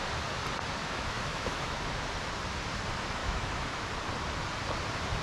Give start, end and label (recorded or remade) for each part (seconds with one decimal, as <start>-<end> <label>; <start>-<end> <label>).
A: 0.0-0.8 recorded; 0.8-1.8 remade; 1.8-3.2 recorded; 3.2-3.9 remade; 3.9-5.2 recorded